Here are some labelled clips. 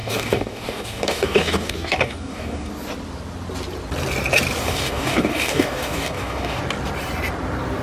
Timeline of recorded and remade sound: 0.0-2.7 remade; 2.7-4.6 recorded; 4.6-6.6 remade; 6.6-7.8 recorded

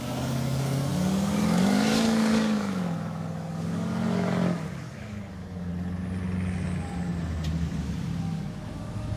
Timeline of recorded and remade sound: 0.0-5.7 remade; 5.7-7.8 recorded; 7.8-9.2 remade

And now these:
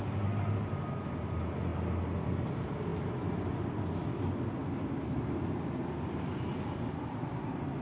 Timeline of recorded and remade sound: 0.0-7.8 recorded